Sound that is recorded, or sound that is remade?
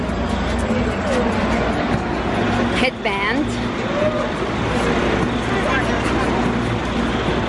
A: recorded